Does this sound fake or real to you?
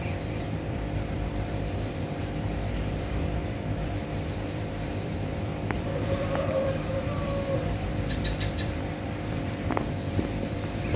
fake